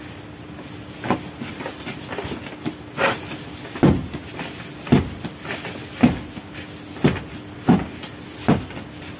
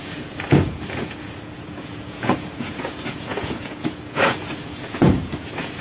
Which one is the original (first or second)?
first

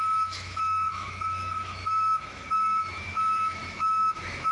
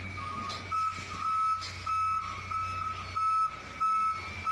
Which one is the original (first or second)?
second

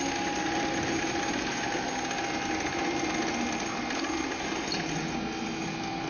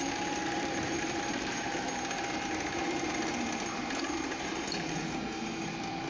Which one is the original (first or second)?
first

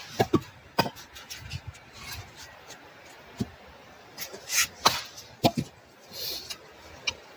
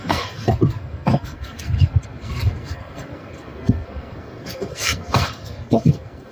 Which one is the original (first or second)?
first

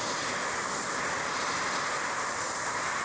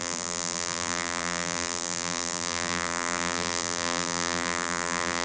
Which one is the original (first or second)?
first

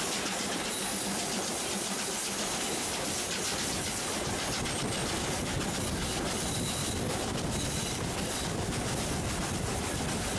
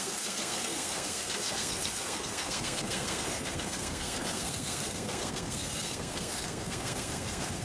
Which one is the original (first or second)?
first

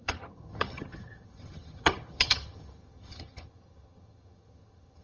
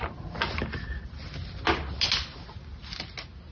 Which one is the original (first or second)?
second